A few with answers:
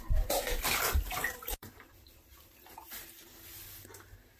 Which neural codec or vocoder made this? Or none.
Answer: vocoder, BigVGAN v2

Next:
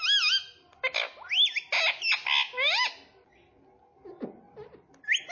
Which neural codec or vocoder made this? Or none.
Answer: none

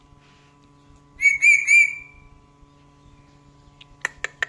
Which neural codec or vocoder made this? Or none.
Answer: none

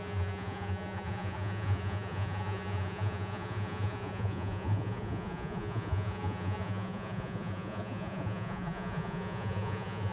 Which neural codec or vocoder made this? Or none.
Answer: vocoder, Vocos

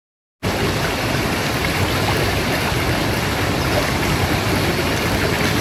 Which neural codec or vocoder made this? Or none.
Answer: none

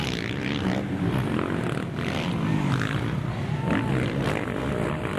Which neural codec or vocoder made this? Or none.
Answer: none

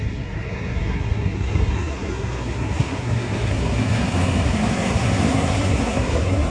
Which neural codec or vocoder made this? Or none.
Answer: codec, SNAC